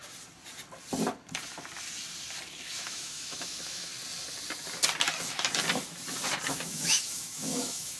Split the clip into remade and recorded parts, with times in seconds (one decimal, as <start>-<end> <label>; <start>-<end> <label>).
0.0-2.9 recorded; 2.9-3.9 remade; 3.9-6.5 recorded; 6.5-8.0 remade